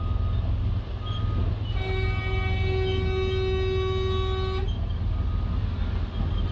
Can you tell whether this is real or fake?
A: real